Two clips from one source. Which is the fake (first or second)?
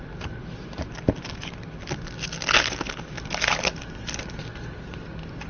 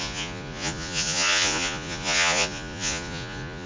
second